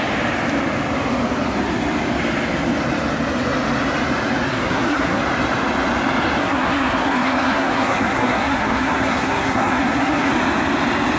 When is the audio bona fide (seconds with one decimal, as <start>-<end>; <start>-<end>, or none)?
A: 0.0-4.5; 5.2-6.4; 10.3-11.2